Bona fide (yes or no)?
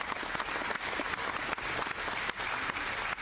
yes